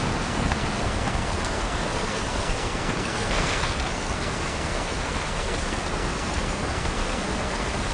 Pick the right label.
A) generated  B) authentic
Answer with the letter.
A